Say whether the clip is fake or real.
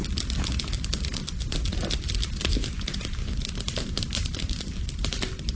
real